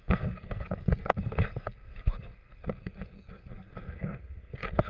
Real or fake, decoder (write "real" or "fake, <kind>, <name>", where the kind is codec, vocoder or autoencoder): fake, codec, SNAC